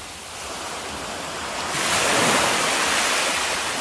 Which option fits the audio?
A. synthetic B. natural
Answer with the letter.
B